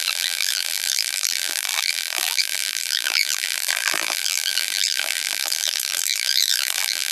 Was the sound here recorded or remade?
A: remade